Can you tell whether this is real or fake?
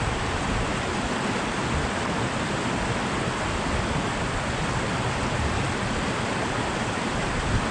real